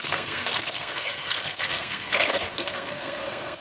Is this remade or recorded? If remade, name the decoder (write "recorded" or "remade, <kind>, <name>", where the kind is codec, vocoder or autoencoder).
remade, codec, SNAC